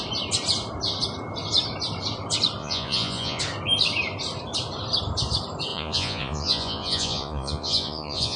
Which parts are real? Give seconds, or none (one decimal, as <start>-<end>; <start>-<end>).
0.0-2.6; 3.4-5.7